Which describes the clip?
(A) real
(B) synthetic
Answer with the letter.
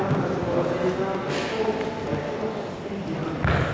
A